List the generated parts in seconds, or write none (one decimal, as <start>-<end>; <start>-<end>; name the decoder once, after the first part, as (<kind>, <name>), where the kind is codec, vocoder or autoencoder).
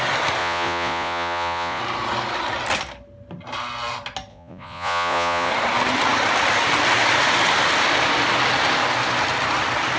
0.4-1.8 (vocoder, Vocos); 4.3-5.5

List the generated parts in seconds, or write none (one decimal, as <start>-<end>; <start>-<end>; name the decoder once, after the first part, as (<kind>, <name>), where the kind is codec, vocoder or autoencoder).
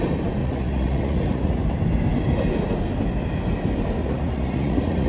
0.4-1.6 (vocoder, Vocos); 4.0-5.1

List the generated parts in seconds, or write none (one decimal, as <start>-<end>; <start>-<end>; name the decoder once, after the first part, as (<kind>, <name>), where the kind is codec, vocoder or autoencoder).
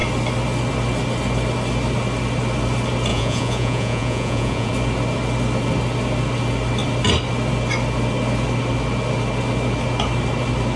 3.1-4.7 (vocoder, Vocos)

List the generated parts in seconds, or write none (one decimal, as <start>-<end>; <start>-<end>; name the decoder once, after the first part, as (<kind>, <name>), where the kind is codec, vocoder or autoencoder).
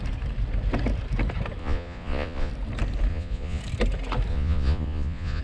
1.6-2.5 (vocoder, Vocos); 3.1-3.6; 4.3-5.4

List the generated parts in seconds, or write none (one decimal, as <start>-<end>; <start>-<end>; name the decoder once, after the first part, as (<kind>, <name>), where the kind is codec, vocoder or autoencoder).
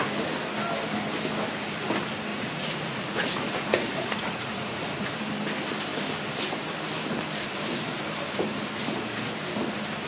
2.3-5.1 (vocoder, Vocos)